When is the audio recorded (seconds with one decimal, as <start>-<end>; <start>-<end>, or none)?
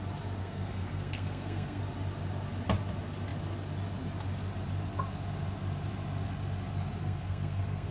0.0-0.4; 1.8-7.0